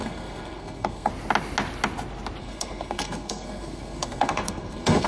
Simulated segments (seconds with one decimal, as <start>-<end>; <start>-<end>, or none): 0.0-1.1; 2.4-5.1